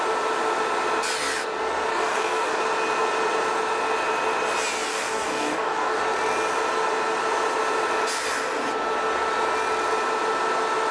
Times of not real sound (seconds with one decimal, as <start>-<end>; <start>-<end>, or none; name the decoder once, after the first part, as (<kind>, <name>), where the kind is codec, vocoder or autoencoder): 1.9-2.6 (codec, DAC); 4.9-6.0